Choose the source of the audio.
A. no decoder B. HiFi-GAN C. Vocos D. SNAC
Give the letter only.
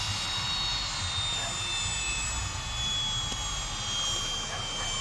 A